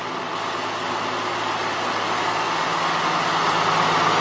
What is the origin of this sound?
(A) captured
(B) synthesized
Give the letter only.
A